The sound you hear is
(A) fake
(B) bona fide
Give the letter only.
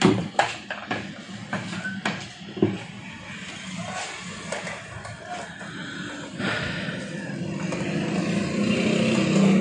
B